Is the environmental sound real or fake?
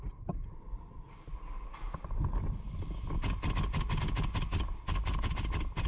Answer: real